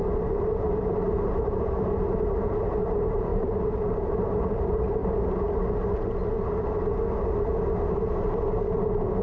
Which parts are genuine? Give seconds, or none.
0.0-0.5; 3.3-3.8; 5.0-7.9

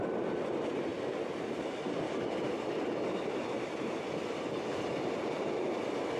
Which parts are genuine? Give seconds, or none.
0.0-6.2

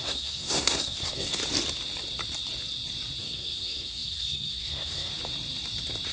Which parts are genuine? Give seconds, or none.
1.4-3.2; 5.1-6.1